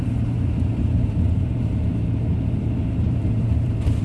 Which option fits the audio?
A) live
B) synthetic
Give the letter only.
B